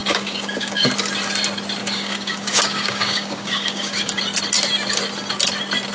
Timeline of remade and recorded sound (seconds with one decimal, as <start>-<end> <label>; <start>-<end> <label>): 0.0-0.9 remade; 0.9-1.8 recorded; 1.8-4.2 remade; 4.2-5.9 recorded